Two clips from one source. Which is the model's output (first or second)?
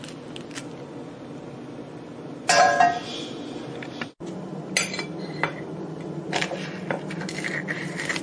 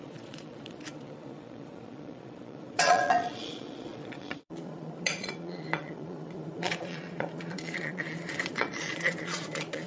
second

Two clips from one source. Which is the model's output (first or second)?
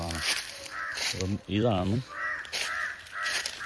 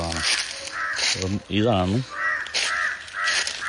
first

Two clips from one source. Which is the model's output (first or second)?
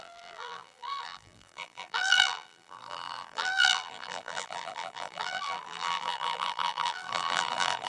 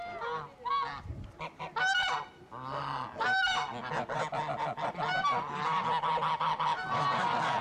first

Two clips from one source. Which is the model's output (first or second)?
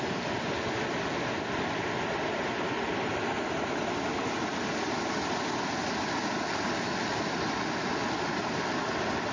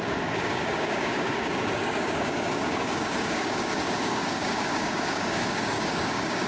second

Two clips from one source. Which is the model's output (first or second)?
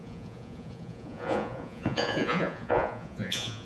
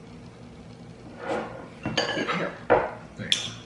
first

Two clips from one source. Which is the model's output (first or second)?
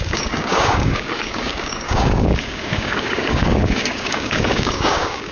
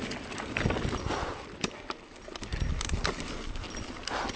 first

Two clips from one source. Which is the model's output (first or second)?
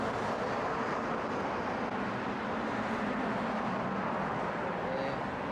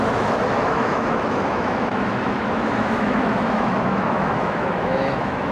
second